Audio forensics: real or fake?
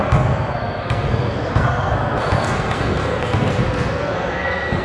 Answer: fake